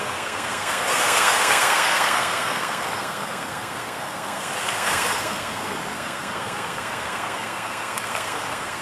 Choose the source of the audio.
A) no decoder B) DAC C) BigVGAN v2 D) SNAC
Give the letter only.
D